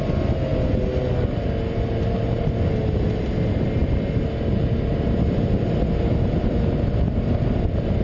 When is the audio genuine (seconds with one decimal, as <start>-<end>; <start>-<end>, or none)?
0.0-8.0